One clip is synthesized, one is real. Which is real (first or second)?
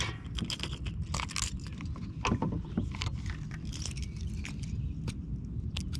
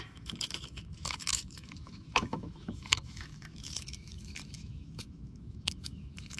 first